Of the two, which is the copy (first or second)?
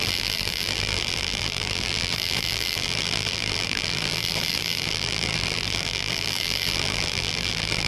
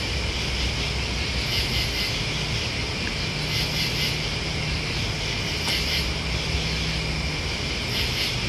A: first